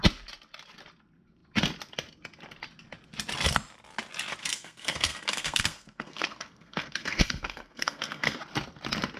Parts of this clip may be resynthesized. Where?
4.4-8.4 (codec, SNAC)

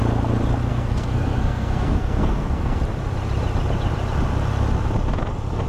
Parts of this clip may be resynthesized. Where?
0.7-2.8 (codec, SNAC)

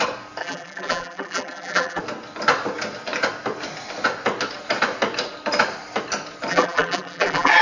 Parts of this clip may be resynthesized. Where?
0.4-2.0 (vocoder, BigVGAN v2); 6.5-7.6